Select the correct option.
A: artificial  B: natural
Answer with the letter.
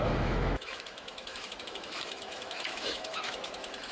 A